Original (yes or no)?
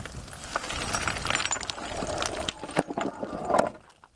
yes